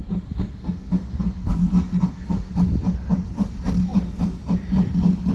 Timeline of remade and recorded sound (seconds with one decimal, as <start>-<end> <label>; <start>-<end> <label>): 0.0-2.5 remade; 2.5-5.3 recorded

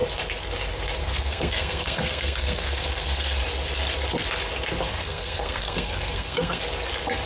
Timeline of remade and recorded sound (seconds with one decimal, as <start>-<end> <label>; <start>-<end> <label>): 0.0-1.0 recorded; 1.0-3.4 remade; 3.4-4.9 recorded; 4.9-6.6 remade; 6.6-7.3 recorded

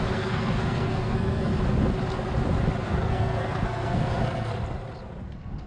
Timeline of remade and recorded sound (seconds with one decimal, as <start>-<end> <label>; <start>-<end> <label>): 0.0-1.5 remade; 1.5-2.8 recorded; 2.8-4.5 remade; 4.5-5.2 recorded; 5.2-5.7 remade

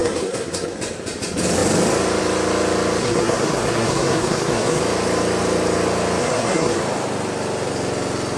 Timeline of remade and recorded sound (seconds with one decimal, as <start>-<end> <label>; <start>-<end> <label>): 0.0-0.8 remade; 0.8-3.0 recorded; 3.0-4.8 remade; 4.8-6.2 recorded; 6.2-6.8 remade; 6.8-8.4 recorded

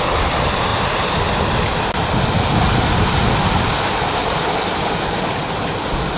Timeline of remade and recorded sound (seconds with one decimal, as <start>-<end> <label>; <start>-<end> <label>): 0.0-6.2 recorded

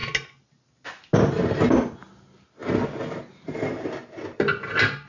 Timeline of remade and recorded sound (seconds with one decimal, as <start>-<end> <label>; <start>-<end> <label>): 0.0-5.1 recorded

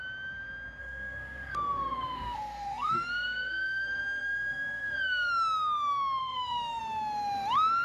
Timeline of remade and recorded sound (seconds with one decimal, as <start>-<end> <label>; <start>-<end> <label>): 0.0-0.8 recorded; 0.8-5.3 remade; 5.3-6.2 recorded; 6.2-6.8 remade; 6.8-7.8 recorded